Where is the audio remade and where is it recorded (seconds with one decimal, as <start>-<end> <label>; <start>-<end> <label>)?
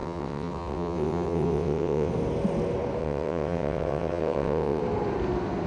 0.0-2.1 remade; 2.1-3.0 recorded; 3.0-4.8 remade; 4.8-5.7 recorded